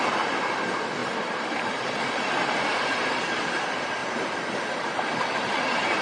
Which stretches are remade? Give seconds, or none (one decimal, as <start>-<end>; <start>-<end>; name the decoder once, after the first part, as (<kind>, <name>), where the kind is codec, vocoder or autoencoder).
1.0-2.0 (vocoder, BigVGAN v2); 2.7-3.2; 4.0-5.5

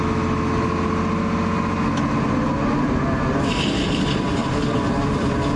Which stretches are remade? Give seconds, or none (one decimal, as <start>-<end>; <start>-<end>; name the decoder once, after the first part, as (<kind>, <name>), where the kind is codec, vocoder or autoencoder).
4.4-5.6 (vocoder, BigVGAN v2)

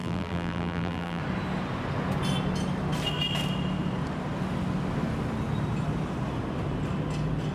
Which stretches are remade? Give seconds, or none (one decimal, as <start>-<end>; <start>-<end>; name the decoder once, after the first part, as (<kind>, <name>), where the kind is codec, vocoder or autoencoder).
0.0-1.2 (vocoder, BigVGAN v2)